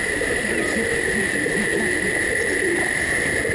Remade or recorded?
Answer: recorded